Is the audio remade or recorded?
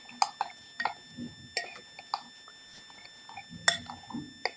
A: recorded